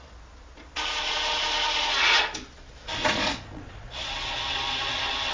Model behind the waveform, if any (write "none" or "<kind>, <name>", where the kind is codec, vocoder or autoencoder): vocoder, Vocos